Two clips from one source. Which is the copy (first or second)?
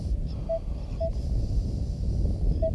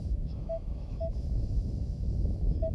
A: second